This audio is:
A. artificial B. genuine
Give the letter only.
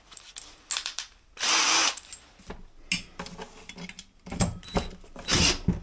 B